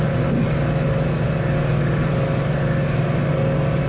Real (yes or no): yes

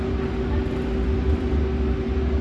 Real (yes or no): yes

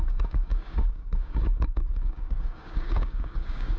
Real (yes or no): no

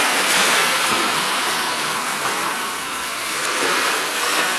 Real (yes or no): no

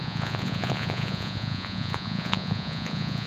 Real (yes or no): no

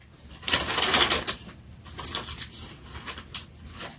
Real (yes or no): yes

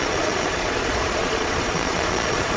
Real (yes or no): no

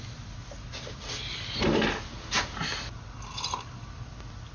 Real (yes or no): yes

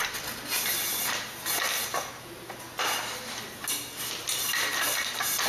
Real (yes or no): yes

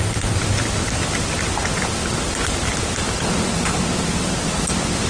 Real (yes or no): no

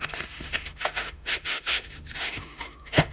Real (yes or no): no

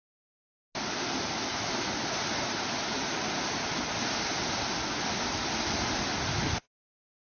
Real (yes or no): yes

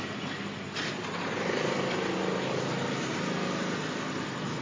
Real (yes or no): yes